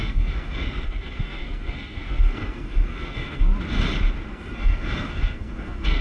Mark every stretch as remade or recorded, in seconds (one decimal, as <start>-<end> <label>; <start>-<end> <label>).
0.0-3.5 remade; 3.5-4.3 recorded; 4.3-6.0 remade